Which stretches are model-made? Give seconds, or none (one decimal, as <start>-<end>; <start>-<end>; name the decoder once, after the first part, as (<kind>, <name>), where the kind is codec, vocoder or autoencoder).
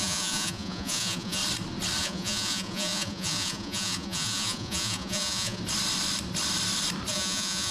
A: 0.0-1.4 (vocoder, Vocos); 2.0-5.6; 7.1-7.7